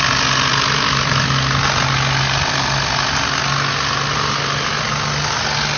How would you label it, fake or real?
real